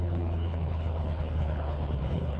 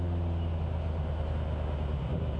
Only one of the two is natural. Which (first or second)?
second